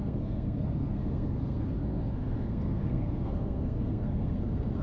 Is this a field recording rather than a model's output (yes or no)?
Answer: no